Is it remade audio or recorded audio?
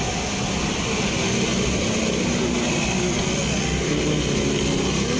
recorded